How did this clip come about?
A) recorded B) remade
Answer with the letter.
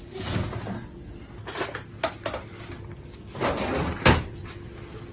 A